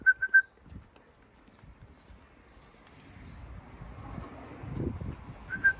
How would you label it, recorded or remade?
remade